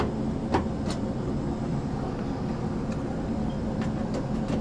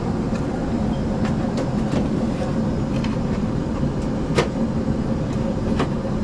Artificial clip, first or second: second